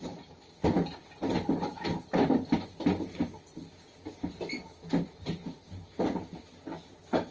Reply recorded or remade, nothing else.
recorded